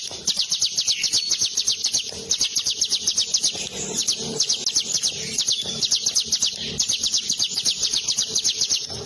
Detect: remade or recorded recorded